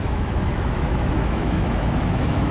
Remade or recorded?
remade